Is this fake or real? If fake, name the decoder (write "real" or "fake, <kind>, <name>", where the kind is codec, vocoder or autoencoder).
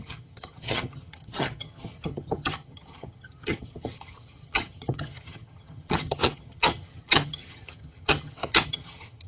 fake, vocoder, HiFi-GAN